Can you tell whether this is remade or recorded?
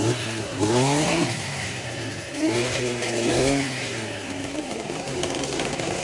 remade